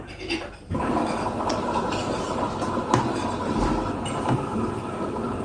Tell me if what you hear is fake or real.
fake